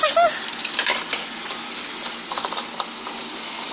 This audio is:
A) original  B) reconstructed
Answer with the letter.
A